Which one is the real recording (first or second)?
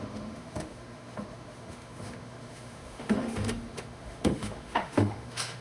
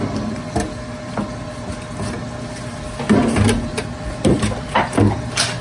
second